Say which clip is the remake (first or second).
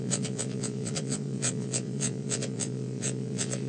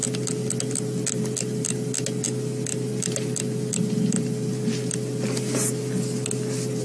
first